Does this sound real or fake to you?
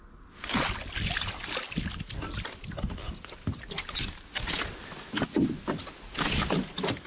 real